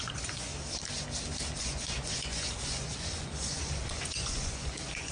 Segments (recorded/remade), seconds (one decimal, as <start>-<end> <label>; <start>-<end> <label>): 0.0-0.5 remade; 0.5-1.6 recorded; 1.6-5.1 remade